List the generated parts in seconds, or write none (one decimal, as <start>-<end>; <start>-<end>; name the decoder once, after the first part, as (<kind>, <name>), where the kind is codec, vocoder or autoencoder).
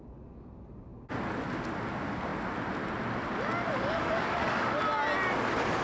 3.7-4.8 (codec, DAC)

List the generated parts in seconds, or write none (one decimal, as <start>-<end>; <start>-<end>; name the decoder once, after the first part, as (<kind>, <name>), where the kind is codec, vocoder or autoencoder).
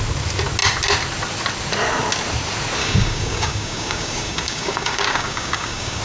2.8-6.0 (codec, DAC)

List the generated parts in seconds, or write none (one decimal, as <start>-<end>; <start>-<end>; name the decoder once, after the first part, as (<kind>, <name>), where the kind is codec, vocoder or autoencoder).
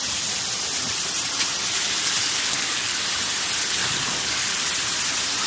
2.2-3.0 (codec, DAC); 3.8-4.5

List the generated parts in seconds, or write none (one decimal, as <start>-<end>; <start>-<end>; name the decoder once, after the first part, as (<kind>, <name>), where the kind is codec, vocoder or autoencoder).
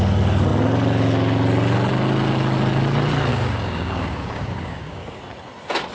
3.3-5.2 (codec, DAC)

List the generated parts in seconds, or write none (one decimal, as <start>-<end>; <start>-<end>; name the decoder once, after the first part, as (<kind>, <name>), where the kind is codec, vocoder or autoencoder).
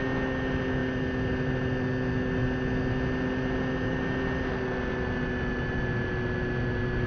none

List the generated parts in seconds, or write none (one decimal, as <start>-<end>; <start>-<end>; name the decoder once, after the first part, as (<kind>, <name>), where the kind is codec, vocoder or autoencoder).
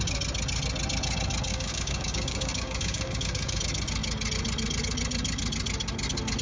1.5-3.6 (codec, DAC)